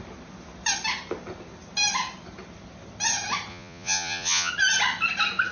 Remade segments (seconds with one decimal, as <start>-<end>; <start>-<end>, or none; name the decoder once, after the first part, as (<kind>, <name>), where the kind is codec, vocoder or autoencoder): 3.5-4.5 (vocoder, Vocos)